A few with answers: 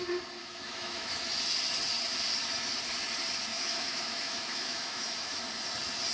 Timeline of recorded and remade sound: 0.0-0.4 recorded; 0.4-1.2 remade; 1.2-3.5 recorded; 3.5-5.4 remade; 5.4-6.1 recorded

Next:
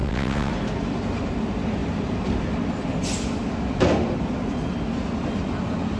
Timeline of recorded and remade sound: 0.0-0.5 remade; 0.5-6.0 recorded

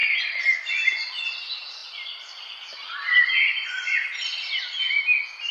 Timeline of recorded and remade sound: 0.0-1.2 remade; 1.2-1.8 recorded; 1.8-5.0 remade; 5.0-5.5 recorded